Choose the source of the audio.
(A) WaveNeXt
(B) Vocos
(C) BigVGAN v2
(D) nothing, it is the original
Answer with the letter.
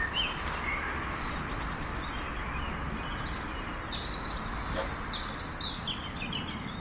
D